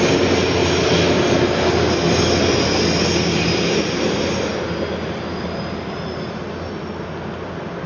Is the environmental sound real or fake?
real